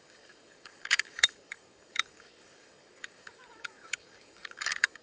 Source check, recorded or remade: remade